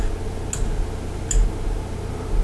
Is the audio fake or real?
real